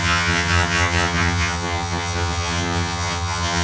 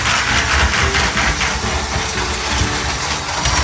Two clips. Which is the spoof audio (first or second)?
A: first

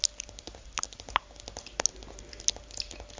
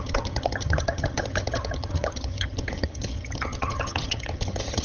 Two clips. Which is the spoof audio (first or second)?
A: second